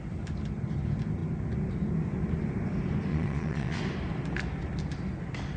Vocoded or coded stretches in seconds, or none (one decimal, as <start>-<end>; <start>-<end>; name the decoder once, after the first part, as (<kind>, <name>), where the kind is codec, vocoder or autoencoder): 3.1-3.8 (vocoder, Vocos)